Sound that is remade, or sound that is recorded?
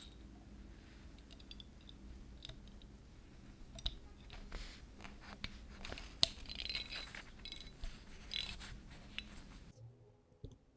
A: recorded